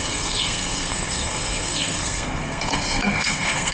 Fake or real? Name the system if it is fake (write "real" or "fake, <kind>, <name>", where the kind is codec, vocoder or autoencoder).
fake, codec, SNAC